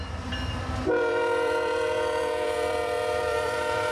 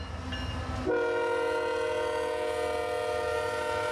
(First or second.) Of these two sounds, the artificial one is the first